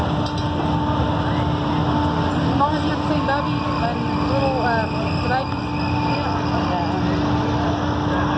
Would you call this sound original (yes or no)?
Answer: yes